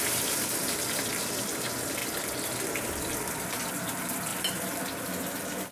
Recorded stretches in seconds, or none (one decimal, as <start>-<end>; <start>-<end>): 0.0-5.7